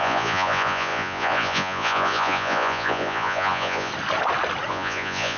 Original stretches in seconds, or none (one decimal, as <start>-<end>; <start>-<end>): 3.9-4.7